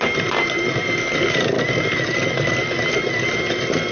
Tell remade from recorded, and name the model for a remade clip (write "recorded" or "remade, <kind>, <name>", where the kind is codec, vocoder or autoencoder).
recorded